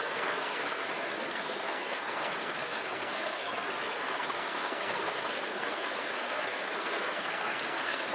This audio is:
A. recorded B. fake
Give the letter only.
B